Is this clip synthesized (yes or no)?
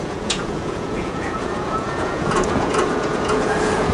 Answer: yes